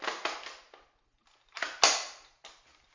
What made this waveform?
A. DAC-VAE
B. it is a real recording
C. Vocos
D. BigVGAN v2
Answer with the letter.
B